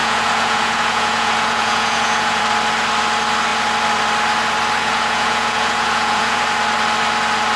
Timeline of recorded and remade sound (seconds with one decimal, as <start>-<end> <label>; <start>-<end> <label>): 0.0-2.4 remade; 2.4-4.8 recorded; 4.8-6.4 remade; 6.4-7.6 recorded

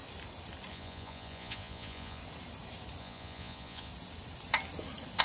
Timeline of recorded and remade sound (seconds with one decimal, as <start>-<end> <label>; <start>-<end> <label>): 0.0-0.7 recorded; 0.7-2.2 remade; 2.2-3.0 recorded; 3.0-3.9 remade; 3.9-5.2 recorded